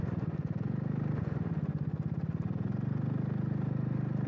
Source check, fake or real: real